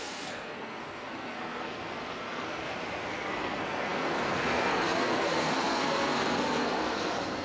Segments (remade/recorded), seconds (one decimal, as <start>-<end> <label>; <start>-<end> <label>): 0.0-2.6 remade; 2.6-3.1 recorded; 3.1-7.4 remade